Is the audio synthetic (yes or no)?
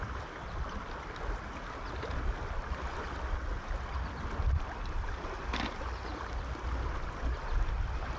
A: no